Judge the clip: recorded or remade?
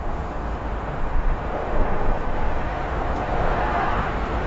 remade